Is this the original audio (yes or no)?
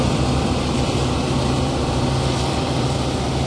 no